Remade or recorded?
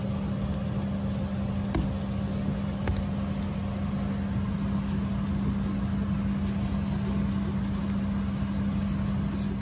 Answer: recorded